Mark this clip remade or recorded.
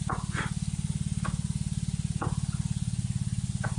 recorded